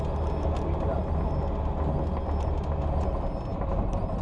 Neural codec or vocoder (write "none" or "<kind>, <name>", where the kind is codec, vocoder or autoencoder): none